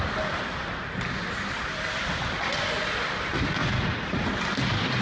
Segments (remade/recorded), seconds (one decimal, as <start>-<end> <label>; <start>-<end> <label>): 0.0-3.6 recorded; 3.6-4.3 remade; 4.3-5.0 recorded